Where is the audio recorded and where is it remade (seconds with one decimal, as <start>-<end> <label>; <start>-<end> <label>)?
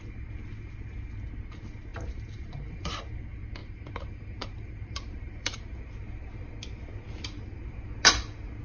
0.0-1.9 recorded; 1.9-3.1 remade; 3.1-3.6 recorded; 3.6-5.8 remade; 5.8-8.6 recorded